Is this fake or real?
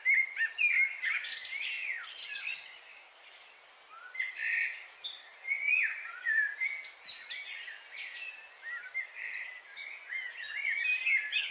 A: real